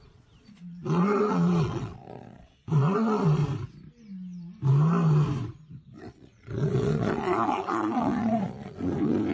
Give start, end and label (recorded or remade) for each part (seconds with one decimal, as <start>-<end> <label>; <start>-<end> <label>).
0.0-3.4 remade; 3.4-6.0 recorded; 6.0-9.3 remade